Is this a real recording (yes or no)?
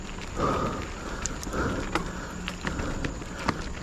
yes